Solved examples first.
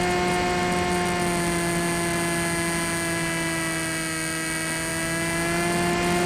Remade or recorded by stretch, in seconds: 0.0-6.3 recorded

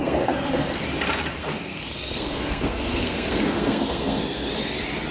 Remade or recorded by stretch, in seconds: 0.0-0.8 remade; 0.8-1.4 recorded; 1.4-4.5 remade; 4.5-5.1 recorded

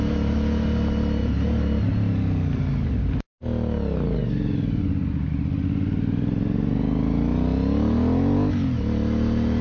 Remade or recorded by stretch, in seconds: 0.0-9.6 recorded